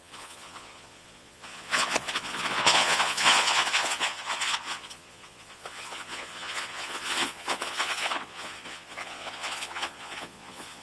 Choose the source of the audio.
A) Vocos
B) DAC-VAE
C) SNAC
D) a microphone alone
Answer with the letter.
A